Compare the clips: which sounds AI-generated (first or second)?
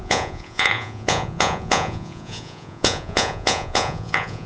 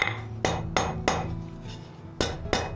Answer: first